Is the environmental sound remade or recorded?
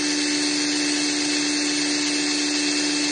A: recorded